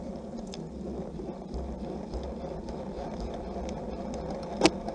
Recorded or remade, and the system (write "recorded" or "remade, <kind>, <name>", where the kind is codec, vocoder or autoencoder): recorded